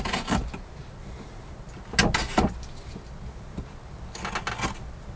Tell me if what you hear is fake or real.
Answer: real